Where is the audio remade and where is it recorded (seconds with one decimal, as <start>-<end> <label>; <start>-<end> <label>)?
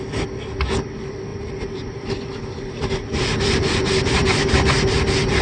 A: 0.0-1.3 recorded; 1.3-4.5 remade; 4.5-5.4 recorded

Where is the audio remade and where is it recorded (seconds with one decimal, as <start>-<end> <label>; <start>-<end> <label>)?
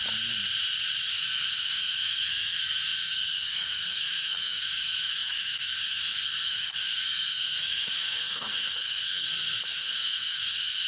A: 0.0-1.1 recorded; 1.1-10.9 remade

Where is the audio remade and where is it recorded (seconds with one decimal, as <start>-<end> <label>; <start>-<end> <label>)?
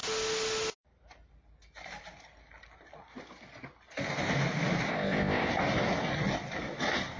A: 0.0-4.9 recorded; 4.9-5.5 remade; 5.5-7.2 recorded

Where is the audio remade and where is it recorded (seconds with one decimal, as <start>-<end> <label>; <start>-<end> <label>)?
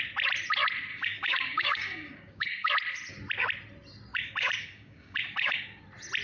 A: 0.0-0.9 recorded; 0.9-2.7 remade; 2.7-4.1 recorded; 4.1-5.8 remade; 5.8-6.2 recorded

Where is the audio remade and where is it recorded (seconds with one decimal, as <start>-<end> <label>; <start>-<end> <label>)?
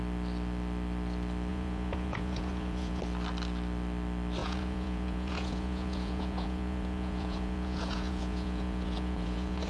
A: 0.0-1.5 recorded; 1.5-3.0 remade; 3.0-4.4 recorded; 4.4-9.7 remade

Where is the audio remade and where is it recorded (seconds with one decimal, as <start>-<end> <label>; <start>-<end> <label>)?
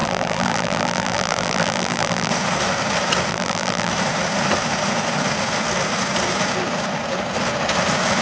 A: 0.0-2.3 remade; 2.3-3.3 recorded; 3.3-3.9 remade; 3.9-8.2 recorded